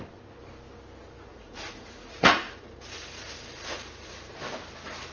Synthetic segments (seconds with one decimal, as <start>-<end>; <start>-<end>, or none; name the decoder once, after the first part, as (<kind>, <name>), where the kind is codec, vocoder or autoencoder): 1.3-4.4 (vocoder, Vocos)